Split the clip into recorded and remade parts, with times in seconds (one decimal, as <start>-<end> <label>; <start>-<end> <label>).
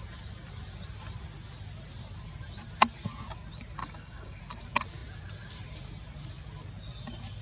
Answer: 0.0-3.8 recorded; 3.8-4.4 remade; 4.4-7.4 recorded